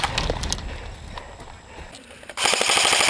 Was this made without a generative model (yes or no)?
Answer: yes